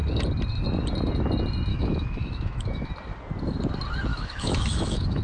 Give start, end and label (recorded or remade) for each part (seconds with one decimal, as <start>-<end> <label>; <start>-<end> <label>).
0.0-1.7 recorded; 1.7-2.9 remade; 2.9-4.1 recorded; 4.1-5.2 remade